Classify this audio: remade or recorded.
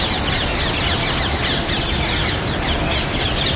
recorded